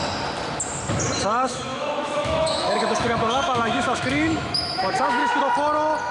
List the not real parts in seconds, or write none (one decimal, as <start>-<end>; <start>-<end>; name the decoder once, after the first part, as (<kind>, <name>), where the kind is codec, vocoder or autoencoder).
1.7-5.4 (autoencoder, DAC-VAE)